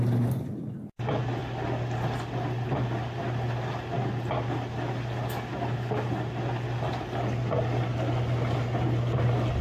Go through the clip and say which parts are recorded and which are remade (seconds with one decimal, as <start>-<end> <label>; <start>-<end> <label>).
0.0-9.6 recorded